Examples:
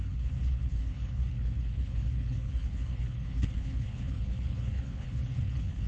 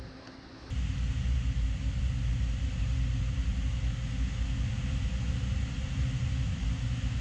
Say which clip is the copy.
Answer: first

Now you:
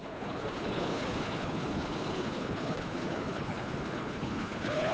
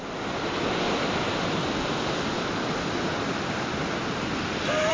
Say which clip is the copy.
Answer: first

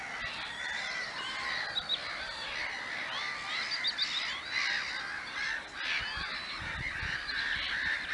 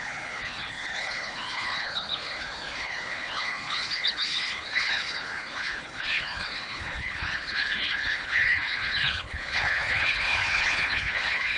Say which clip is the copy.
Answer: second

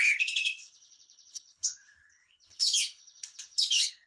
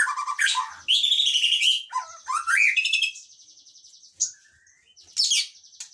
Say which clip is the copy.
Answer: first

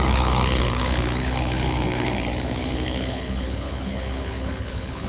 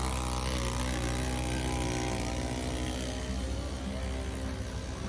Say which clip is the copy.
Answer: first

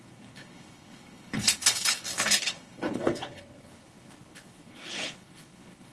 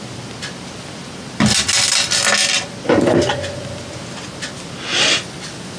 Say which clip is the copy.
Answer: first